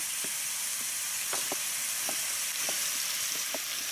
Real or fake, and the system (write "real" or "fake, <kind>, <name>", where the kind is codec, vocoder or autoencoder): fake, vocoder, BigVGAN v2